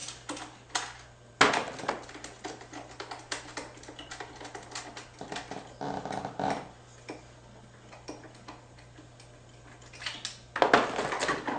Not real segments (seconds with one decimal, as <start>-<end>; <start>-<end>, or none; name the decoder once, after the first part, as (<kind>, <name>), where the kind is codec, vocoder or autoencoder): none